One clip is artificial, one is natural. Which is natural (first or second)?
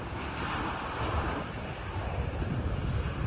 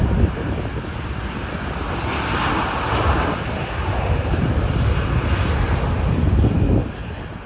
second